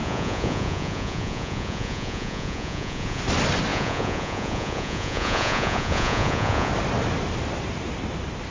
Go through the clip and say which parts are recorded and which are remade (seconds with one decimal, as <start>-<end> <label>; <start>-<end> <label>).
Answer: 0.0-3.2 remade; 3.2-3.7 recorded; 3.7-6.7 remade; 6.7-8.5 recorded